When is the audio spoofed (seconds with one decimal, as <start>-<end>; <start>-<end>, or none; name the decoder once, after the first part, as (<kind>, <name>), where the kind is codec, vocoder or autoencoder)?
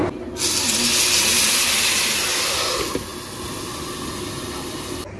none